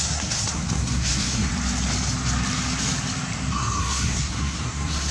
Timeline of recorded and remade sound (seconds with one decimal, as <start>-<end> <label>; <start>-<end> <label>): 0.0-1.5 remade; 1.5-3.5 recorded; 3.5-5.1 remade